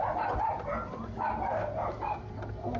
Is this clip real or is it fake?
real